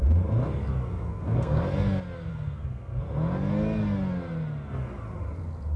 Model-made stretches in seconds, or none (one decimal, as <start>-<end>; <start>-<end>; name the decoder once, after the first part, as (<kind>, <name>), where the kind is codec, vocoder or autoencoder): 0.9-1.6 (codec, SNAC); 2.3-3.0

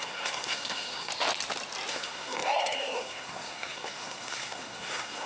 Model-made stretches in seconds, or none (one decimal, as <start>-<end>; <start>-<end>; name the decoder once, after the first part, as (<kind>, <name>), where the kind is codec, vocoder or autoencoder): 0.0-1.1 (codec, SNAC); 1.9-5.3

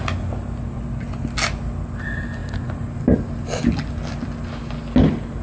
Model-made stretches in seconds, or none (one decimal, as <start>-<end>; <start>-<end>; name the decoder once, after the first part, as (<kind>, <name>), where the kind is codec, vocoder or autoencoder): none

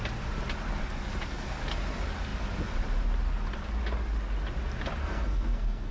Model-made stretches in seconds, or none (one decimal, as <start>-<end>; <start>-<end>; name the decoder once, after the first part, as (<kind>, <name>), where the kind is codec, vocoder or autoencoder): 5.0-5.9 (codec, SNAC)